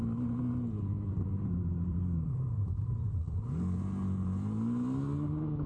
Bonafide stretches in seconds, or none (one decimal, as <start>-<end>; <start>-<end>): 0.0-1.9; 3.2-5.7